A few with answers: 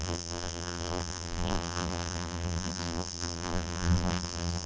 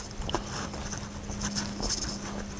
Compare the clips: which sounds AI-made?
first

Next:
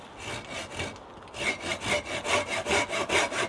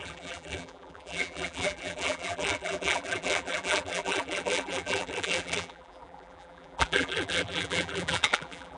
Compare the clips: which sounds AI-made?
second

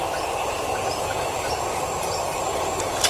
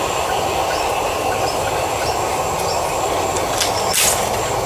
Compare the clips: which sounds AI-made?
first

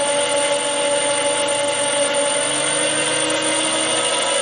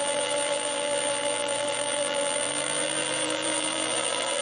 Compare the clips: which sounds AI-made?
second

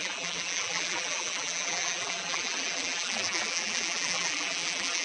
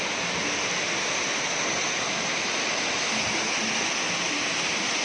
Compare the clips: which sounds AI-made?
first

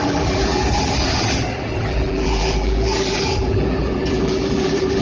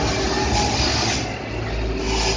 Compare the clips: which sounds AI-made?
first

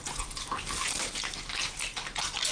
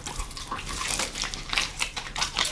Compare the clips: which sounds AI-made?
second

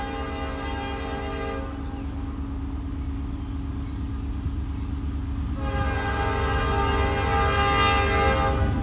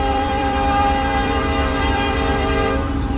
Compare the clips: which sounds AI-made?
second